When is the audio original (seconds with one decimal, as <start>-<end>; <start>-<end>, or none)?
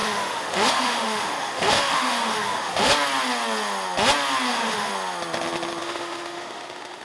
2.9-4.5; 4.9-5.8